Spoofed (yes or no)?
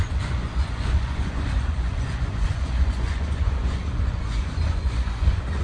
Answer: yes